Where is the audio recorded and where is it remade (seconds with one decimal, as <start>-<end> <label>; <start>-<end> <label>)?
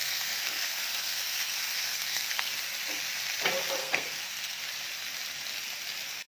0.0-2.5 remade; 2.5-3.8 recorded; 3.8-4.6 remade; 4.6-6.4 recorded